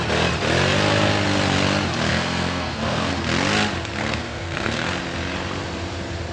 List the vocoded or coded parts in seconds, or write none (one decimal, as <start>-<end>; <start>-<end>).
2.1-3.1; 4.0-4.9